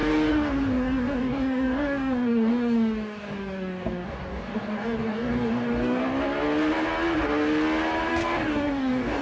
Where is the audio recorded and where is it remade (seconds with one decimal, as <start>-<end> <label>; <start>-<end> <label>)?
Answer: 0.0-6.0 remade; 6.0-8.1 recorded; 8.1-9.2 remade